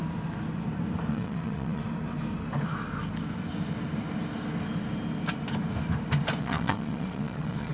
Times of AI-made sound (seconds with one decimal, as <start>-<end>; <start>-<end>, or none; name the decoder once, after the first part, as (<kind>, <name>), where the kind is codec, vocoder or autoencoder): 1.1-1.8 (vocoder, Vocos); 6.4-7.7